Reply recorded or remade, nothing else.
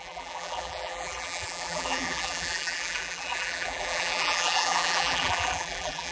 remade